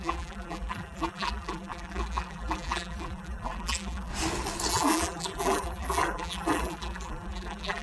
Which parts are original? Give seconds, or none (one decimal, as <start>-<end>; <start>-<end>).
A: 4.1-4.7